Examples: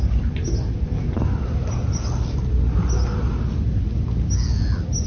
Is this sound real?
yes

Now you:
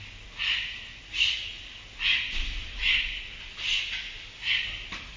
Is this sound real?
yes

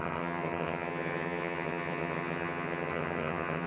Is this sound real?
no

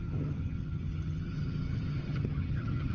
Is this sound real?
no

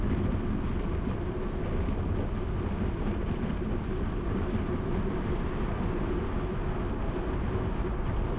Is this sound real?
yes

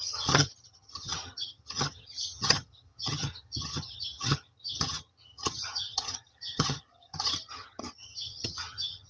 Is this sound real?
no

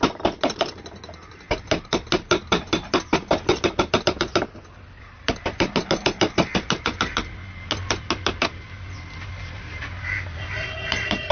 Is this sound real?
yes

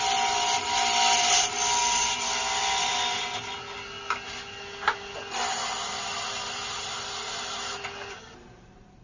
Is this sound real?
yes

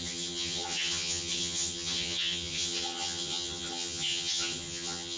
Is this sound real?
no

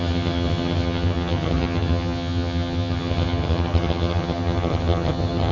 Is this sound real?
no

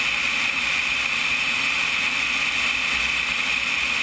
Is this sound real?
yes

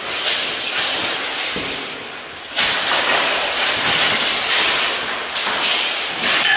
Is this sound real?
yes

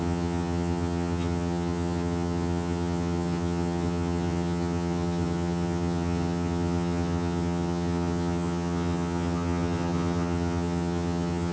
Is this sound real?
no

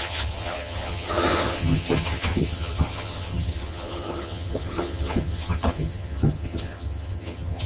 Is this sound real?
no